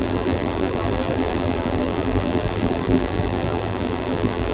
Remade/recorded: remade